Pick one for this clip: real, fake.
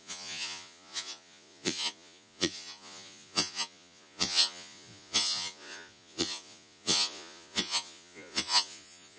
fake